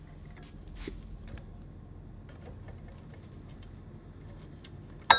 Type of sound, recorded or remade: recorded